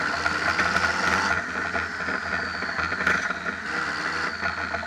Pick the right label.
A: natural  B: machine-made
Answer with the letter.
A